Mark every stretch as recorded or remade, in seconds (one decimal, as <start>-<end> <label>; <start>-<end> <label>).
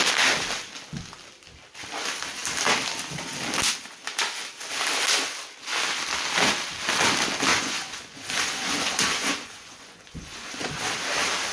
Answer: 0.0-7.5 recorded; 7.5-10.8 remade; 10.8-11.5 recorded